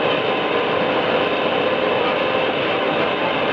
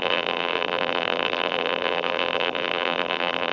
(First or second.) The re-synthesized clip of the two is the second